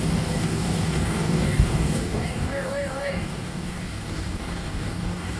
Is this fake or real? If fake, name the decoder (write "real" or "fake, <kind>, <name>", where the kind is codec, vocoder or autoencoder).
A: fake, codec, DAC